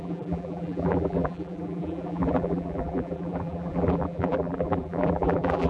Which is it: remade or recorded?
remade